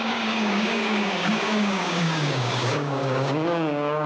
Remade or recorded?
remade